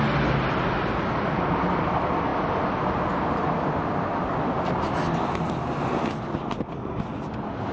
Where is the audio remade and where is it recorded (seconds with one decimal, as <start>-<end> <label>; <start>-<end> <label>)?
0.0-7.7 recorded